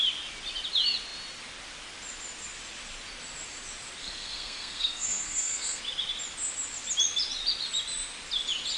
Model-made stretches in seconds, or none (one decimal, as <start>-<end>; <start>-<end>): 4.0-5.8